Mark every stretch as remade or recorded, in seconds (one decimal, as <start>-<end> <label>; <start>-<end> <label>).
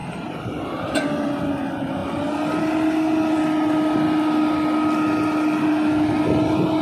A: 0.0-1.0 remade; 1.0-6.8 recorded